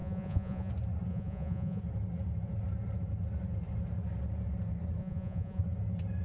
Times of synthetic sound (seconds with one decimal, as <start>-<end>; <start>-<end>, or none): 0.0-0.7; 1.1-1.8; 5.0-5.6